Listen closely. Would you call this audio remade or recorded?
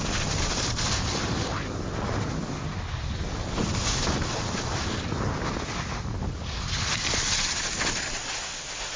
recorded